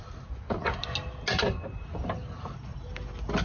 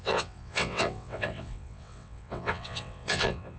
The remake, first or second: second